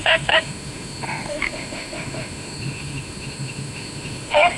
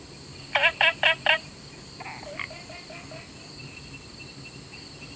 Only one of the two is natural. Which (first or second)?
second